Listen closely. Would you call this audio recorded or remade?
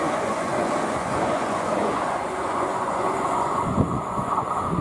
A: remade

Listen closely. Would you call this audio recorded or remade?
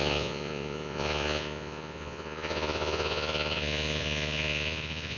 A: remade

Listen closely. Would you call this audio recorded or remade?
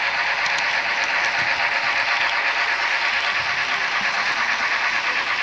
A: recorded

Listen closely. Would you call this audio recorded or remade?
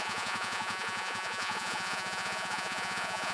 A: remade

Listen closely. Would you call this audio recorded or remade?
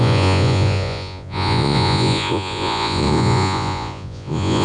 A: remade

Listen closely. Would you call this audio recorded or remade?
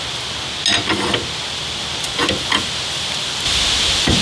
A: recorded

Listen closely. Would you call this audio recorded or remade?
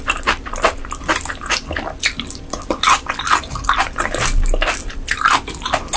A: recorded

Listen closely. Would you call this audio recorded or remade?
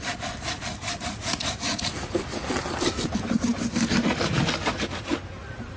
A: recorded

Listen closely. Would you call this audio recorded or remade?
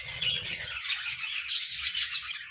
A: remade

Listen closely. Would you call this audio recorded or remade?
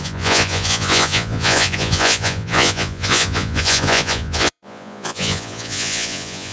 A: remade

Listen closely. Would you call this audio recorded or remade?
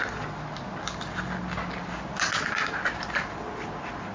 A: recorded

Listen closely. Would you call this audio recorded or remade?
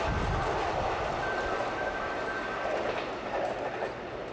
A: recorded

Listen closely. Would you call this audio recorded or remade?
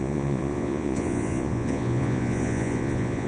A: remade